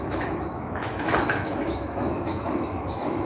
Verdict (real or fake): fake